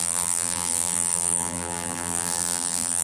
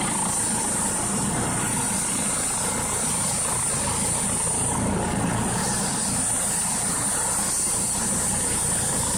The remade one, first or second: first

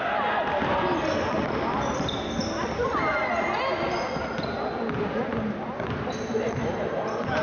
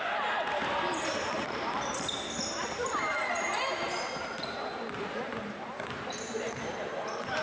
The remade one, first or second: second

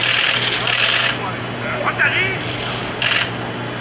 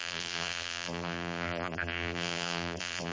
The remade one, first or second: second